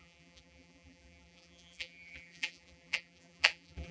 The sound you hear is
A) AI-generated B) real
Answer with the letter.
A